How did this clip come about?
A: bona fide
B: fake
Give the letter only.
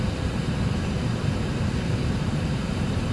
B